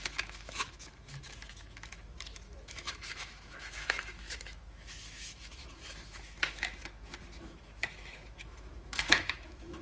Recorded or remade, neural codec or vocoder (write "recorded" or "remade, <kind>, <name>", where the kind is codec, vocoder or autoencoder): remade, autoencoder, DAC-VAE